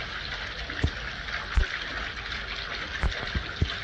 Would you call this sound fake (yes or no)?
no